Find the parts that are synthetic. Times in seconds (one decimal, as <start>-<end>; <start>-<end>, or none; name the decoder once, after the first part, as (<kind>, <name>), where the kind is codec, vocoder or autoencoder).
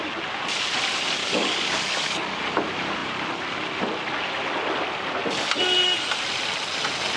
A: 1.2-2.4 (codec, DAC)